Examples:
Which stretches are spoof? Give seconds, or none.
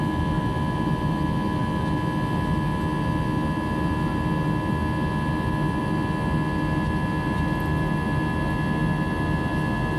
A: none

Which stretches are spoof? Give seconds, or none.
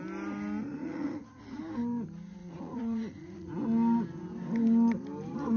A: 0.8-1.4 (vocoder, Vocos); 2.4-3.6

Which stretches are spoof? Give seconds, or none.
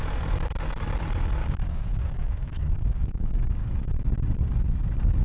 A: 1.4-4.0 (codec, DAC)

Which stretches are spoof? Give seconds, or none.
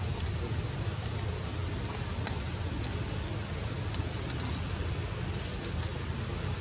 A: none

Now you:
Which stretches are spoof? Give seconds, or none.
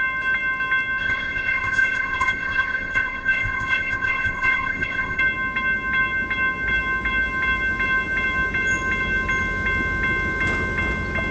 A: 1.0-5.2 (codec, ZipCodec)